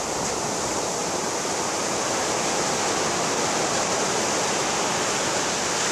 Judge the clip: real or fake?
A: real